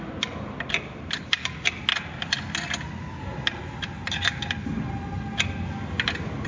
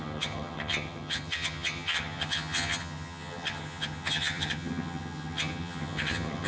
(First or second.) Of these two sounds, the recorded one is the first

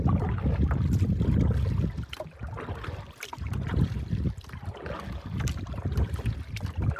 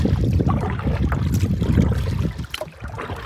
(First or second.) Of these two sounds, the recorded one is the first